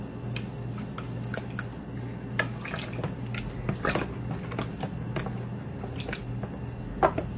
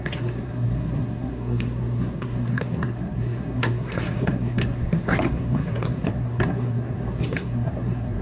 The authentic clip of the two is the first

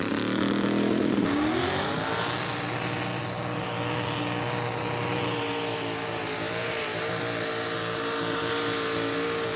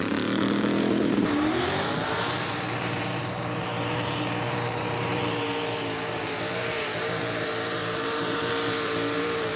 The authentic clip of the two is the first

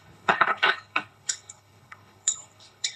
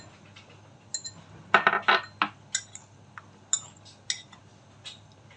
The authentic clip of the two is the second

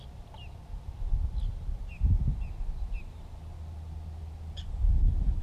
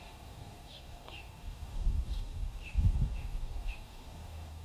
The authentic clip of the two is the first